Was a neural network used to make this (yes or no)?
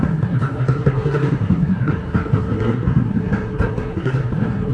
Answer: yes